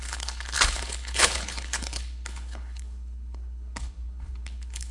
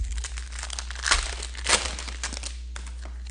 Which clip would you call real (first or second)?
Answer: second